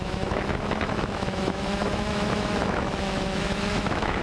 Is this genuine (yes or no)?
no